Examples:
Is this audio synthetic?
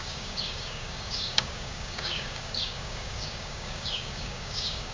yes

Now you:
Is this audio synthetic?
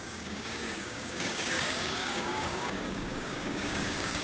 yes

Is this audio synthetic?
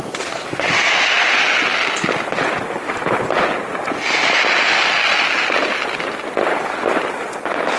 no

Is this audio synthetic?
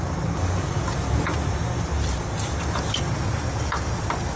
no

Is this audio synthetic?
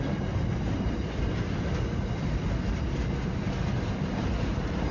no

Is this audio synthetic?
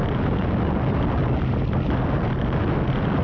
no